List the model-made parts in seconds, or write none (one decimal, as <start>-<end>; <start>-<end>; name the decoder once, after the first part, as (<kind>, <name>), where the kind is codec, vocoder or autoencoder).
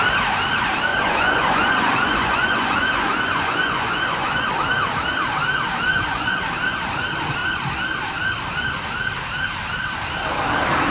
0.9-4.5 (vocoder, Vocos); 5.9-6.4